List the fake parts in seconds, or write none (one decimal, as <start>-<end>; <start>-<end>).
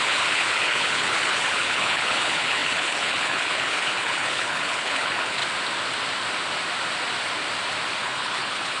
0.0-5.4; 8.0-8.8